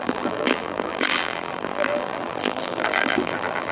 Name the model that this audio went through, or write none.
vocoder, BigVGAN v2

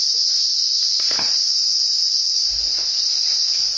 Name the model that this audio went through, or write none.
none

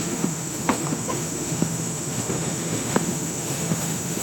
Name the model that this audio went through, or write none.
autoencoder, DAC-VAE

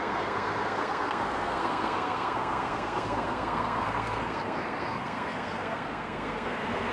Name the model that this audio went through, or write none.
codec, SNAC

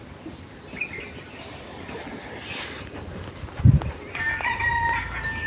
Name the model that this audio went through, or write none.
none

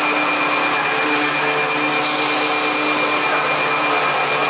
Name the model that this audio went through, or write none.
none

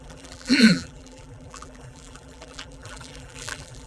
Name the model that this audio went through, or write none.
vocoder, BigVGAN v2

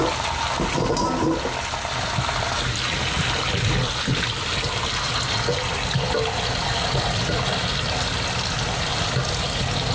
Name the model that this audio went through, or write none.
none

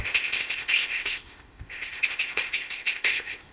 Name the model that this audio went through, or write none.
codec, ZipCodec